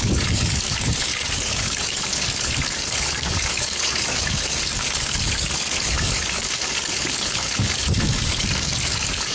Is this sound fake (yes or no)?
yes